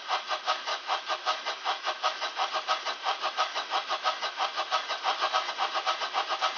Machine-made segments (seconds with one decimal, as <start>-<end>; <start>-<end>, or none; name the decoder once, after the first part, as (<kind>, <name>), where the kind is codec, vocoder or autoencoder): 0.7-2.5 (autoencoder, DAC-VAE); 3.0-5.5